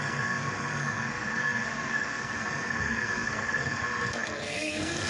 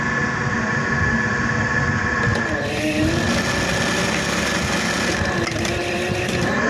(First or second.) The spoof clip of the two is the first